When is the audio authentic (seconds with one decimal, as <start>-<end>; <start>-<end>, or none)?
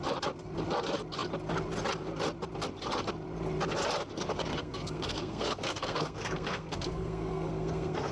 0.0-4.5